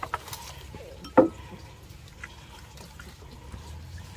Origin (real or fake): real